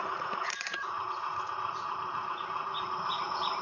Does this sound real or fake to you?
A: fake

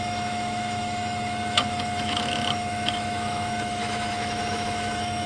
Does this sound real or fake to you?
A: fake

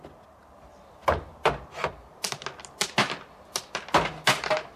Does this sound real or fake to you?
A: real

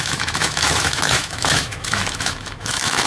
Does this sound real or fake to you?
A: fake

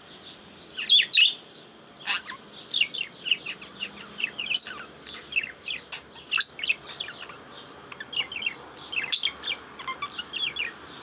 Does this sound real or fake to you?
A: real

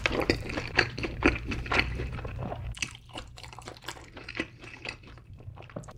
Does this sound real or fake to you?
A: fake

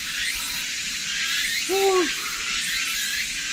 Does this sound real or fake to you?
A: real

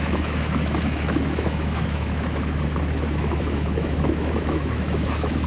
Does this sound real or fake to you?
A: fake